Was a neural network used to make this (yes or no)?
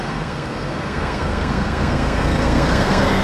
yes